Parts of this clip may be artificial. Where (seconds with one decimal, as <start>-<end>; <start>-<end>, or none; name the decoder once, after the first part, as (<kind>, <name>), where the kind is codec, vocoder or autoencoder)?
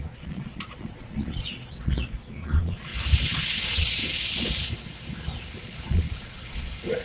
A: 0.0-2.9 (vocoder, Vocos); 3.6-4.0; 5.6-7.0